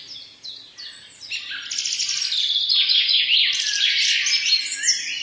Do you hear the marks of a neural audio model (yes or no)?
no